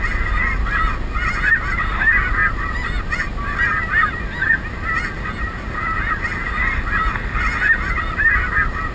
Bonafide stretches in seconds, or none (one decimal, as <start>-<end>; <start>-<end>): 0.0-8.9